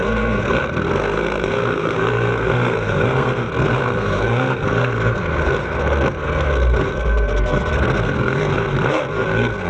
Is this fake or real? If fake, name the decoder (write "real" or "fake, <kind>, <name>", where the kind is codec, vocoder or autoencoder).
fake, codec, SNAC